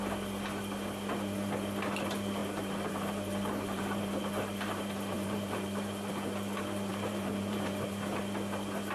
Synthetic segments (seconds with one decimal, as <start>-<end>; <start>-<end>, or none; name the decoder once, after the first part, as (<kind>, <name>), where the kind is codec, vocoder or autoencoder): 2.4-6.1 (vocoder, BigVGAN v2); 6.9-8.2